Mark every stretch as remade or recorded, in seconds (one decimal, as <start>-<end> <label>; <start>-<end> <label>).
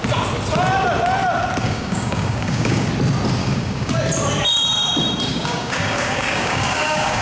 0.0-1.6 recorded; 1.6-2.9 remade; 2.9-3.4 recorded; 3.4-3.9 remade; 3.9-5.3 recorded; 5.3-7.2 remade